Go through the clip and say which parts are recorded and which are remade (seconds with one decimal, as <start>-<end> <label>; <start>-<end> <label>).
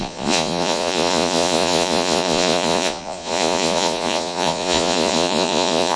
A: 0.0-6.0 remade